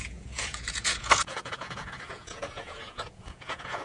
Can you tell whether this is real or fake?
fake